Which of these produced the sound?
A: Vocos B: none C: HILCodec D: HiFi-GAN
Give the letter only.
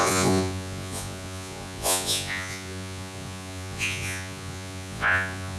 A